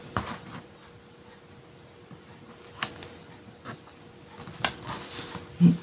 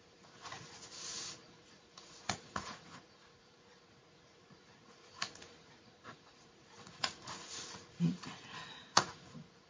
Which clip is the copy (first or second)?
second